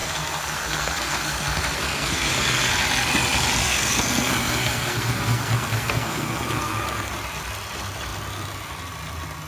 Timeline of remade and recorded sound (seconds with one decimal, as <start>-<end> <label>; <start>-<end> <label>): 0.0-2.7 remade; 2.7-3.6 recorded; 3.6-7.1 remade; 7.1-9.5 recorded